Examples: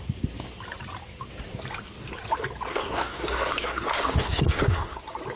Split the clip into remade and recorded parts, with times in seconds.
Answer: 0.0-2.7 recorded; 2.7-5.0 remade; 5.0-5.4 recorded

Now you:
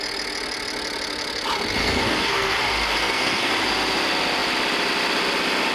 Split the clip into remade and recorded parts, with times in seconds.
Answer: 0.0-1.8 recorded; 1.8-2.6 remade; 2.6-3.0 recorded; 3.0-3.5 remade; 3.5-5.7 recorded

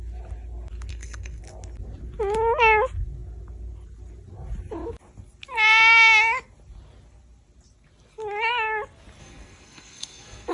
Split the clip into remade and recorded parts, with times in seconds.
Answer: 0.0-0.9 recorded; 0.9-1.4 remade; 1.4-9.2 recorded; 9.2-10.5 remade